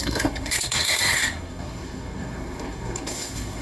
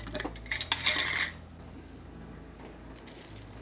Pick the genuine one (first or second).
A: second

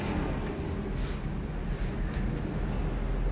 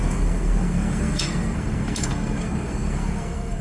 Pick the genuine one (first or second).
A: first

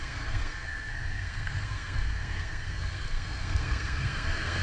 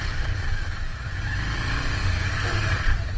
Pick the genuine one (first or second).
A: second